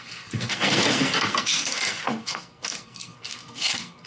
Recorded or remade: remade